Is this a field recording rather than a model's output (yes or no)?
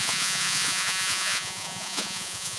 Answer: no